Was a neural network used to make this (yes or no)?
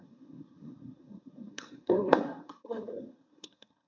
yes